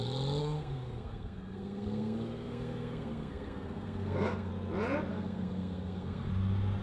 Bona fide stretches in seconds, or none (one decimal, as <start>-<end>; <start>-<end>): 0.0-0.4; 4.5-5.1; 6.3-6.8